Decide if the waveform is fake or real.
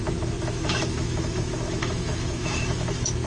fake